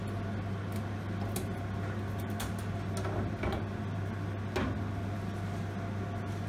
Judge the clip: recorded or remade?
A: recorded